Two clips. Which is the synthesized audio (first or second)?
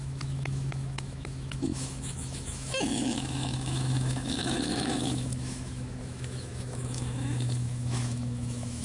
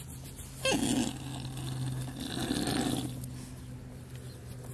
first